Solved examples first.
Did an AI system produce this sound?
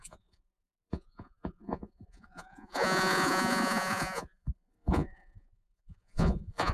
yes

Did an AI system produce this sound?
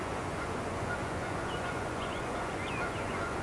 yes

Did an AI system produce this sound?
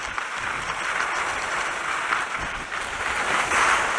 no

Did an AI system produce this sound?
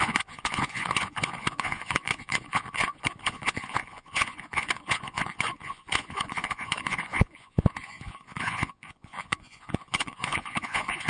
yes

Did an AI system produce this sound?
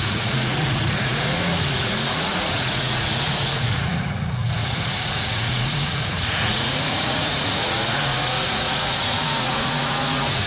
yes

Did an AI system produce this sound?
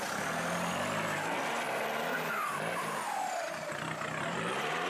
no